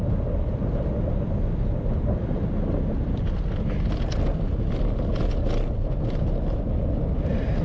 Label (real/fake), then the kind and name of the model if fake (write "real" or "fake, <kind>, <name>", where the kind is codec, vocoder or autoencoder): real